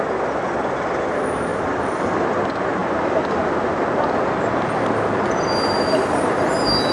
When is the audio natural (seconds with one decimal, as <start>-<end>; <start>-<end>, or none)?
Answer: 0.0-1.5; 2.2-6.9